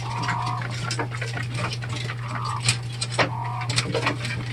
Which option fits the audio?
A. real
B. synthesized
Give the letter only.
A